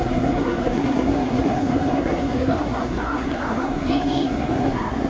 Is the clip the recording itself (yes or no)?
no